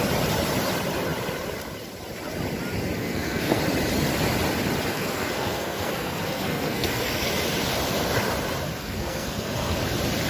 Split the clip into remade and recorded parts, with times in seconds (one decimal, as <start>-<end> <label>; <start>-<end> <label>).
0.0-3.0 recorded; 3.0-3.6 remade; 3.6-4.9 recorded; 4.9-7.3 remade; 7.3-8.8 recorded; 8.8-9.8 remade; 9.8-10.3 recorded